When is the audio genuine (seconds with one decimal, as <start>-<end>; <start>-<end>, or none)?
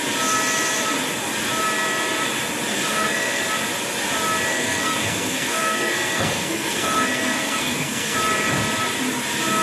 0.0-2.7; 3.4-4.5; 8.2-9.6